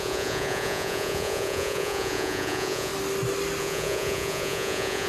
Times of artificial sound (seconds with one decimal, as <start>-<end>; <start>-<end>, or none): 0.0-2.9; 3.6-5.1